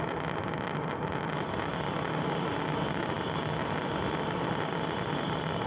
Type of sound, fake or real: real